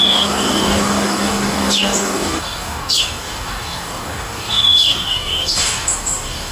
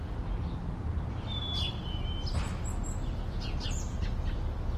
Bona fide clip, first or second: second